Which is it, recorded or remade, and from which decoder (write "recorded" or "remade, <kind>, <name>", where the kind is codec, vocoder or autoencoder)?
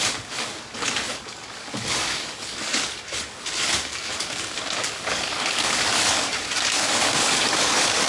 remade, codec, DAC